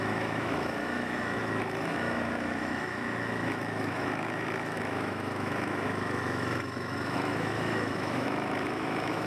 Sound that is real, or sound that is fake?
fake